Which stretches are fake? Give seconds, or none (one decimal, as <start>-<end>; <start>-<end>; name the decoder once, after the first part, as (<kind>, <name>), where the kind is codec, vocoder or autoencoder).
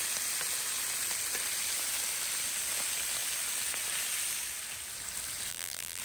5.5-6.0 (vocoder, BigVGAN v2)